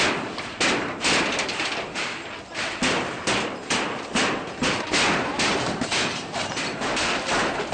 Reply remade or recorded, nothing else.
recorded